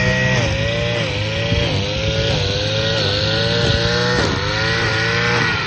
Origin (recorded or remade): recorded